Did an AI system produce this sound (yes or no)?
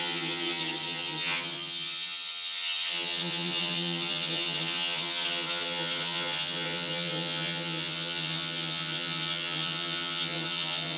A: yes